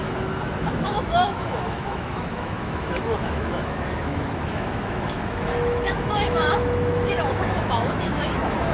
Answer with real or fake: fake